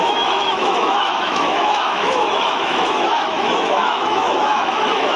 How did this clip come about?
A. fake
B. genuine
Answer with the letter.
A